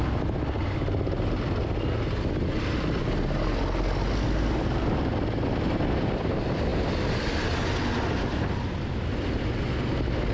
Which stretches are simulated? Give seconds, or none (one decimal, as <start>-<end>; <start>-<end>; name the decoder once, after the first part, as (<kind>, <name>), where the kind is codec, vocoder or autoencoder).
none